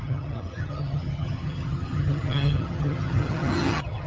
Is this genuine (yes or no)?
no